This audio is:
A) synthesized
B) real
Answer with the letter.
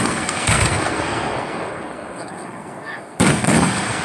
A